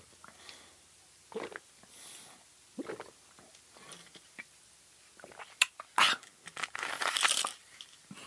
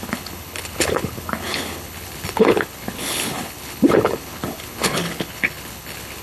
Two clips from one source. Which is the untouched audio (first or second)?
first